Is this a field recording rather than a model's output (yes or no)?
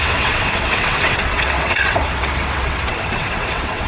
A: no